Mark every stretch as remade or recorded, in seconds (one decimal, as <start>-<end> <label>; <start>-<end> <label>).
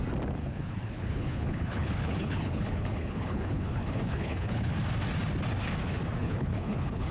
0.0-0.4 recorded; 0.4-4.7 remade; 4.7-6.2 recorded; 6.2-7.1 remade